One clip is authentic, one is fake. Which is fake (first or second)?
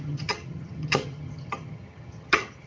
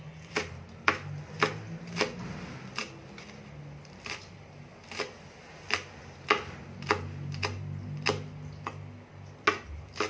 first